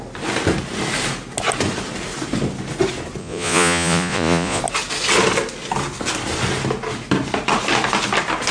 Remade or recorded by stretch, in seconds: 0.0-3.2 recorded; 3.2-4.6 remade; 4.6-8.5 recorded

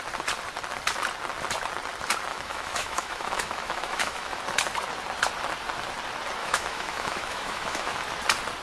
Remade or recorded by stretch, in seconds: 0.0-2.3 recorded; 2.3-4.4 remade; 4.4-6.4 recorded; 6.4-8.0 remade; 8.0-8.6 recorded